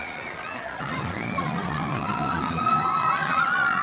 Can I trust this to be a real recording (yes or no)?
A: no